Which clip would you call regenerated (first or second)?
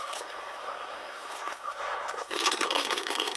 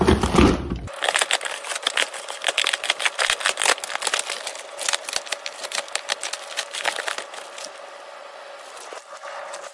first